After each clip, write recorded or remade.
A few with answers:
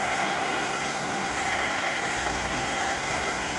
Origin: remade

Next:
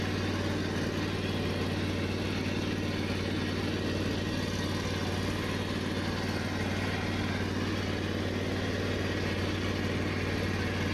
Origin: recorded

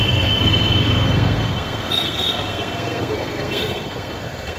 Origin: remade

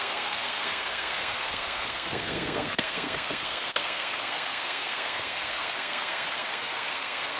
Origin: remade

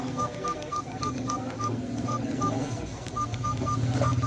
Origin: remade